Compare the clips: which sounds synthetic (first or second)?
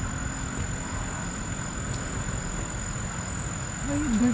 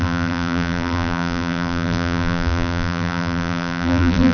second